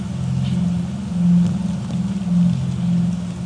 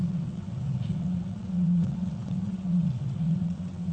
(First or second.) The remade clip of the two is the second